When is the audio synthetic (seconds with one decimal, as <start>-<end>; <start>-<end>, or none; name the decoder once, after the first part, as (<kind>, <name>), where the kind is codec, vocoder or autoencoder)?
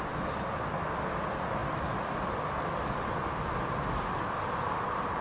none